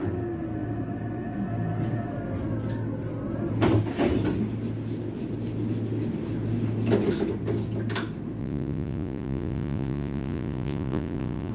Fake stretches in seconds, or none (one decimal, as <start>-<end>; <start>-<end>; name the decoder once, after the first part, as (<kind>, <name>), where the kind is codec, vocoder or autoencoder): 8.4-11.5 (vocoder, Vocos)